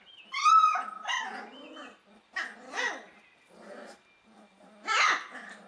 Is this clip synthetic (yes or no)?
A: no